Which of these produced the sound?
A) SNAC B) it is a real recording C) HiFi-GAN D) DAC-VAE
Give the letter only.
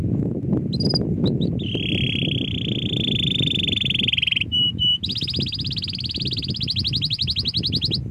B